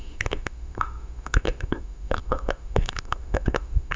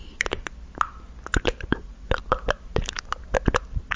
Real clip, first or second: second